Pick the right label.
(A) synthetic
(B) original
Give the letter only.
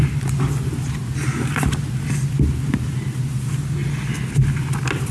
B